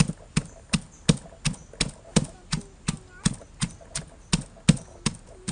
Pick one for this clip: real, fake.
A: real